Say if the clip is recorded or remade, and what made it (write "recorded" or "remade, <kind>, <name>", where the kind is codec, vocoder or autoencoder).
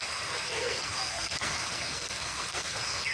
remade, codec, SNAC